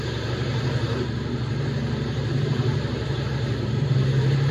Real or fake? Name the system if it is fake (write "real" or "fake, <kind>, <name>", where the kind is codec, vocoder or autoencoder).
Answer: fake, vocoder, BigVGAN v2